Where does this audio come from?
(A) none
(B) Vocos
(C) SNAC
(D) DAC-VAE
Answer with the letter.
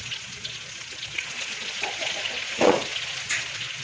B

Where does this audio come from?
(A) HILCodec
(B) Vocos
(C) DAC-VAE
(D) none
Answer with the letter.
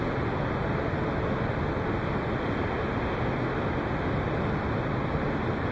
D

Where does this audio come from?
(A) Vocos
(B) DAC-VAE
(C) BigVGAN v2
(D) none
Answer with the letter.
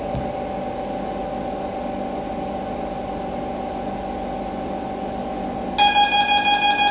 D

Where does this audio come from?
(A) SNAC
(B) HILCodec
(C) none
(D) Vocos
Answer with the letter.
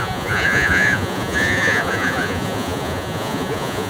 D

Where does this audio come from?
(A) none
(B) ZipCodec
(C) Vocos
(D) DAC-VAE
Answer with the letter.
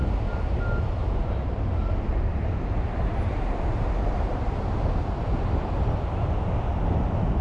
A